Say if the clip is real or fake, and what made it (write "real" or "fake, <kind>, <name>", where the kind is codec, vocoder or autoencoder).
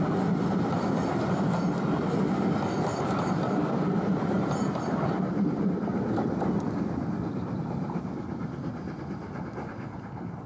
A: real